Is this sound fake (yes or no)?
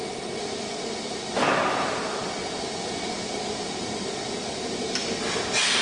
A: no